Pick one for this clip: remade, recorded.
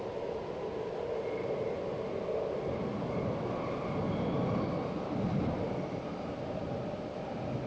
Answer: recorded